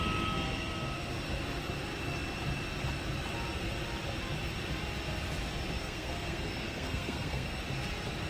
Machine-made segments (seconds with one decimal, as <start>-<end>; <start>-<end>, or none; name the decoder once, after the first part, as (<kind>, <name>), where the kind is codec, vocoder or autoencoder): 5.8-7.6 (codec, SNAC)